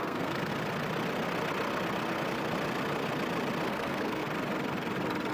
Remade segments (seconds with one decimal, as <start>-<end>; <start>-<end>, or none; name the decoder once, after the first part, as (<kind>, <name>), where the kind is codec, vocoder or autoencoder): 0.0-0.5 (codec, SNAC); 3.7-4.2